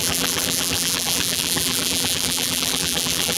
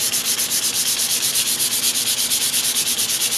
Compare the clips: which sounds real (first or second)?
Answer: second